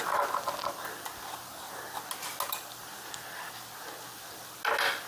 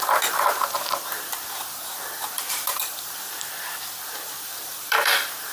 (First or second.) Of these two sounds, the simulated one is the second